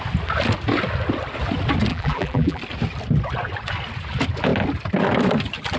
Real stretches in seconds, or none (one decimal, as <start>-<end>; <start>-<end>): 0.0-1.9; 2.6-5.8